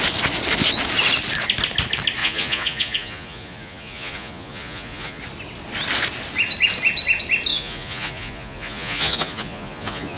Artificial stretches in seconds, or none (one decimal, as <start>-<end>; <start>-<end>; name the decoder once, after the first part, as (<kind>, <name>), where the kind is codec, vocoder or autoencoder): 2.2-5.2 (vocoder, Vocos); 7.5-10.2